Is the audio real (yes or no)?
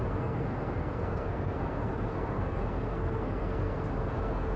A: no